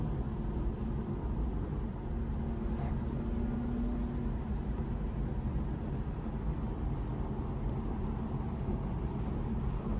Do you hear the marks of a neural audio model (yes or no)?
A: no